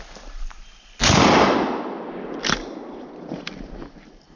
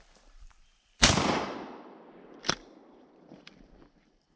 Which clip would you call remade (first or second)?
second